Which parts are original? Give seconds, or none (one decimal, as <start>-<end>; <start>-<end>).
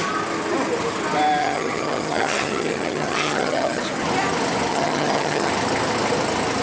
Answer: 0.0-1.4; 3.8-4.7; 5.5-6.6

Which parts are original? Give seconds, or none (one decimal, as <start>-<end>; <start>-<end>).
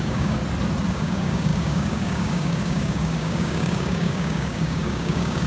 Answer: 0.4-0.9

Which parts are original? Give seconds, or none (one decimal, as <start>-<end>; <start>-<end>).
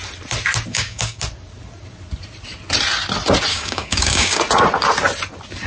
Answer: 0.0-0.7; 1.2-3.5; 4.4-5.7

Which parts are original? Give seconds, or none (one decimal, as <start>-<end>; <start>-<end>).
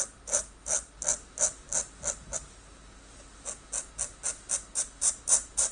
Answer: 0.0-5.7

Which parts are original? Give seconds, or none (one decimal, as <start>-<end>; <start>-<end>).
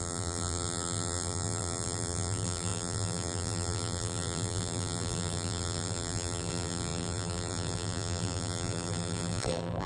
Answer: none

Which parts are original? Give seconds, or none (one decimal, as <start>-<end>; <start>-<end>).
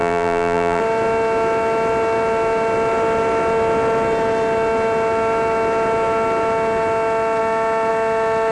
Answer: 0.8-8.5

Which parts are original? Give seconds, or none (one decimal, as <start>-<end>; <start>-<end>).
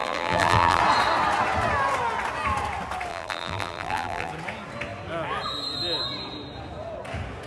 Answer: 0.8-3.1; 4.3-7.5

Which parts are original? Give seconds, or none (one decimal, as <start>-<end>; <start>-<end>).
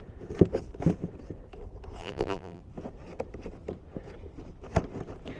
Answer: 0.0-2.0; 2.6-5.4